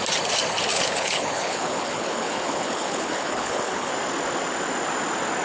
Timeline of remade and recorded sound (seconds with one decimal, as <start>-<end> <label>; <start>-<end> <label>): 0.0-0.7 recorded; 0.7-3.9 remade; 3.9-5.4 recorded